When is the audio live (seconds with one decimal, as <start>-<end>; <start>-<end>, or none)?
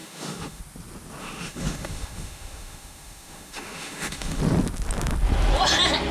0.6-1.2; 4.4-6.1